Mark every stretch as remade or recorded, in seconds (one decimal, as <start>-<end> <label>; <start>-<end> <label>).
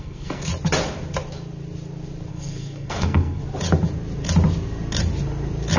0.0-0.5 remade; 0.5-2.3 recorded; 2.3-3.4 remade; 3.4-5.8 recorded